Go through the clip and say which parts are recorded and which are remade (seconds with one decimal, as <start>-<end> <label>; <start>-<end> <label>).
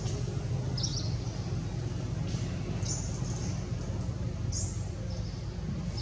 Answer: 0.0-6.0 recorded